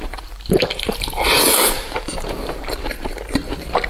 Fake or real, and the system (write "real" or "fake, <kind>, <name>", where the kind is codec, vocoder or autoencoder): fake, vocoder, BigVGAN v2